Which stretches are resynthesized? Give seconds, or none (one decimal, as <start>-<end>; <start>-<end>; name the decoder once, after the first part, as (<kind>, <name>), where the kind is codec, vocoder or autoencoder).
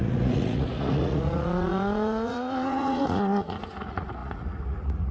0.0-5.1 (vocoder, Vocos)